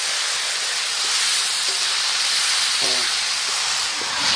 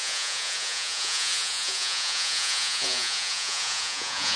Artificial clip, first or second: second